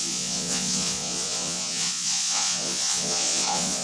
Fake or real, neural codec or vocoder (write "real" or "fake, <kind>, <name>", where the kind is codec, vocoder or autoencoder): fake, vocoder, Vocos